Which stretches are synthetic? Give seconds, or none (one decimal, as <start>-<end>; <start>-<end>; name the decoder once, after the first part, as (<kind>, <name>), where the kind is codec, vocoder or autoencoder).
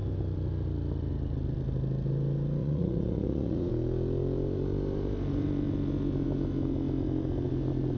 2.6-3.7 (vocoder, Vocos)